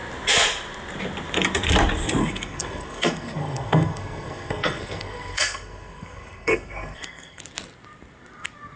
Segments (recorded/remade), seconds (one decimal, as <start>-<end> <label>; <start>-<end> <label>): 0.0-2.2 recorded; 2.2-7.4 remade; 7.4-8.8 recorded